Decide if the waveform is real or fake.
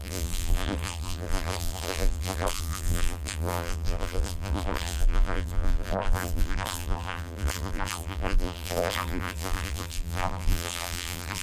fake